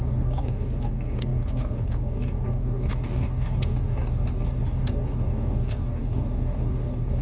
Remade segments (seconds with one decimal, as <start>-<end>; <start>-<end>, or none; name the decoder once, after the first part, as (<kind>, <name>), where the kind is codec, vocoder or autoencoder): 0.0-7.2 (codec, DAC)